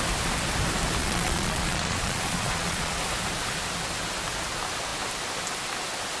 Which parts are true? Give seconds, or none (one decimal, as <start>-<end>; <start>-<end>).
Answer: 0.0-1.0; 3.0-6.2